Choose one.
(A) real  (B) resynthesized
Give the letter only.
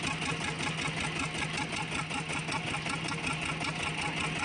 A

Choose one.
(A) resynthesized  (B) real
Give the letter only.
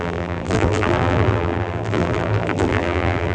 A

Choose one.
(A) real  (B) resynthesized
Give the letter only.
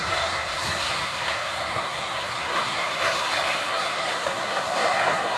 B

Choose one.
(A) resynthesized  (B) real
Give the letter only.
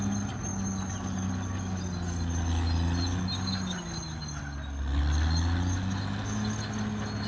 B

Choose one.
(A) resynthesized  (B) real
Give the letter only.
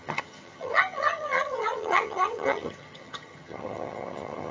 A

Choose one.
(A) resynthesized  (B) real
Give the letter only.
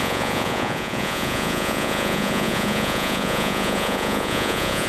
A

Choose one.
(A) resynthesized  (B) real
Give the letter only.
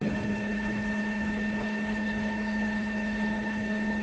A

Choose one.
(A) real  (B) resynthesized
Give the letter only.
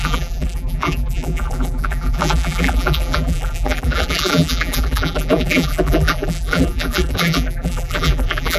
B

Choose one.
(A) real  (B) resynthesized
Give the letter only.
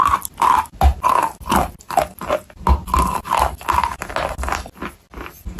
A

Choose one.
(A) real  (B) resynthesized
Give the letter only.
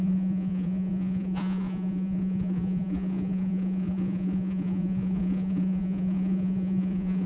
B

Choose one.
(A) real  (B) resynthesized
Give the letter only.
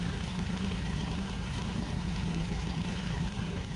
B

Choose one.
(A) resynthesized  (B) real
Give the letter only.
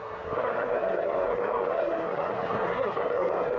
A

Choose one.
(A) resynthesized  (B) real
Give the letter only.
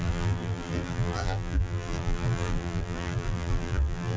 A